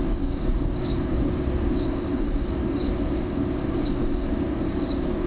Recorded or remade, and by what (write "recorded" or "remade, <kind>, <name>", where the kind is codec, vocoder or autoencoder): remade, codec, DAC